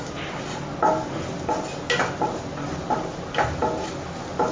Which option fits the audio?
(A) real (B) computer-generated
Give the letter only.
A